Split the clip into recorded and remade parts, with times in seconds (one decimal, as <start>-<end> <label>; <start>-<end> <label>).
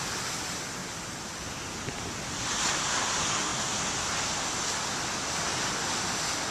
0.0-6.5 recorded